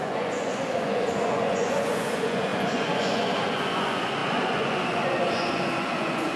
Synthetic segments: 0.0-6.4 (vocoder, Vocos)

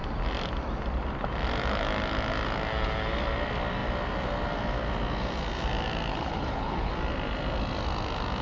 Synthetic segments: 6.1-6.9 (codec, HILCodec)

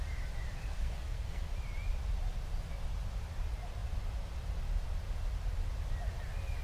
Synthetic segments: 0.7-1.4 (codec, SNAC)

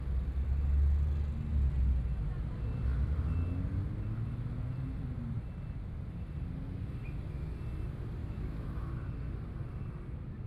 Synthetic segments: 8.2-8.9 (autoencoder, DAC-VAE)

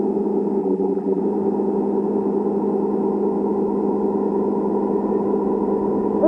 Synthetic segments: 0.6-1.2 (vocoder, BigVGAN v2)

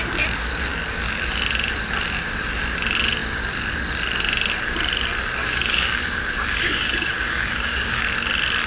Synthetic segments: 5.4-8.0 (codec, DAC)

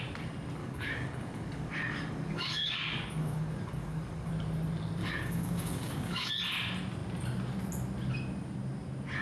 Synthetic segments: 0.6-4.3 (codec, DAC); 5.0-6.3

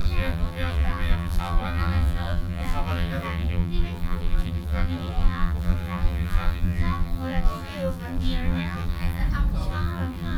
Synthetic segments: 0.0-9.2 (vocoder, BigVGAN v2); 9.7-10.4